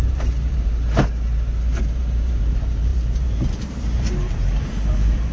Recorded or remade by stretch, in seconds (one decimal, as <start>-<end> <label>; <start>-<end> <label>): 0.0-0.7 remade; 0.7-2.0 recorded; 2.0-5.3 remade